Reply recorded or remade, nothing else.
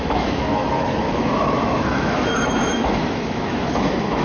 remade